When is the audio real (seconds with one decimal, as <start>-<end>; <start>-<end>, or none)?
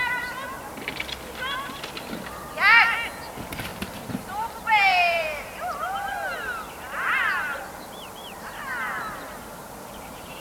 0.0-3.7; 6.7-8.2; 9.0-10.4